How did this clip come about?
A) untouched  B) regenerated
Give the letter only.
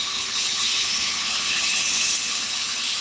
B